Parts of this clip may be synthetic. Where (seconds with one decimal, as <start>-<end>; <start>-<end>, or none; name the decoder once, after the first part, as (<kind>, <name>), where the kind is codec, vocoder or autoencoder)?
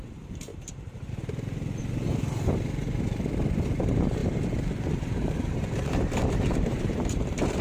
0.5-1.1 (vocoder, BigVGAN v2); 4.2-7.6